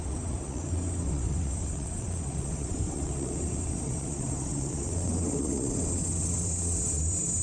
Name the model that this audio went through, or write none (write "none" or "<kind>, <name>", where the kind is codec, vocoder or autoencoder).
vocoder, WaveNeXt